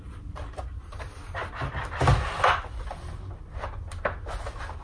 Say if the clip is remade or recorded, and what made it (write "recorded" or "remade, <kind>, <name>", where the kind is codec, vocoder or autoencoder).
recorded